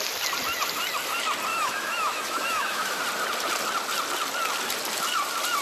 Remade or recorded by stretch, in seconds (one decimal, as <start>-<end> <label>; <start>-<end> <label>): 0.0-1.5 recorded; 1.5-3.0 remade; 3.0-5.6 recorded